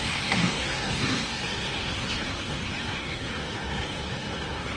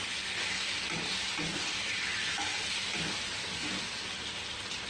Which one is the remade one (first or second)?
first